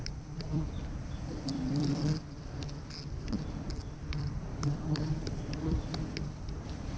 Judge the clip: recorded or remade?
remade